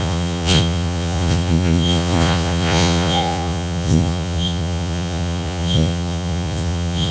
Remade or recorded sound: remade